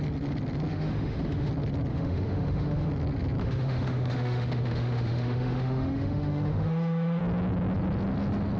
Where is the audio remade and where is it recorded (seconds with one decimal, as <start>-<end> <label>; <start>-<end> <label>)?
0.0-0.7 recorded; 0.7-1.5 remade; 1.5-1.9 recorded; 1.9-2.9 remade; 2.9-3.4 recorded; 3.4-7.2 remade; 7.2-8.6 recorded